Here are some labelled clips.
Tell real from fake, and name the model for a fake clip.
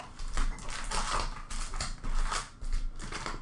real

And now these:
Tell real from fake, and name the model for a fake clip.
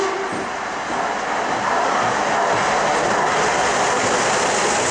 real